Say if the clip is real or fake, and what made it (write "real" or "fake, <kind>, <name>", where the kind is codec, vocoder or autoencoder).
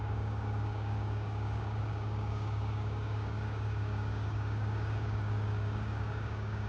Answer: fake, codec, DAC